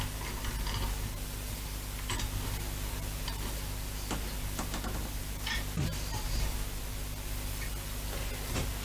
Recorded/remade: recorded